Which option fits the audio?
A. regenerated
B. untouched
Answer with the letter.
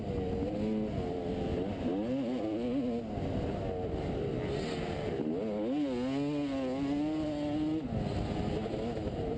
B